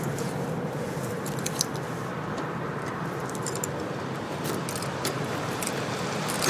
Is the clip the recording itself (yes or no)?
no